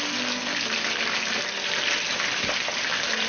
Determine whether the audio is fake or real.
real